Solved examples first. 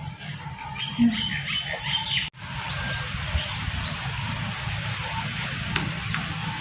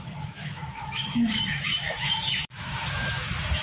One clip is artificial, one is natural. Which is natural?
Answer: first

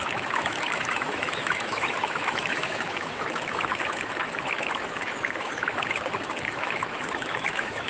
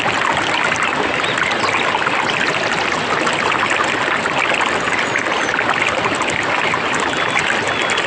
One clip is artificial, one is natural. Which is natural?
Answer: second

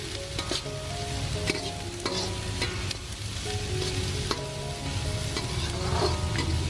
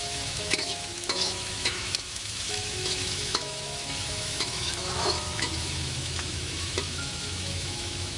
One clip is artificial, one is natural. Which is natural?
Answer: first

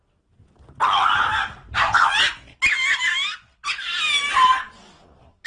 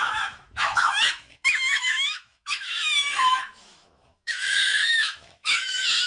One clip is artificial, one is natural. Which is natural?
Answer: first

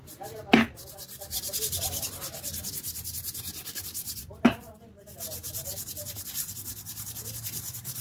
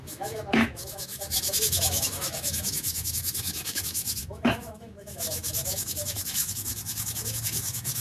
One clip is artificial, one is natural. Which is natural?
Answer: first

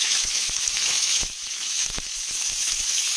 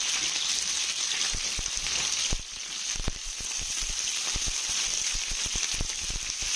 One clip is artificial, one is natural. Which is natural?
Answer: second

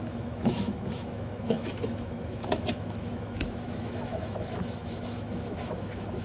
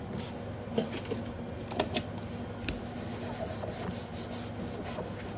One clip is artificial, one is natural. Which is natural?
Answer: second